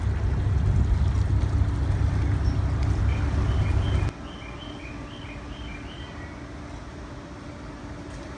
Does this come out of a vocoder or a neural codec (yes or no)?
no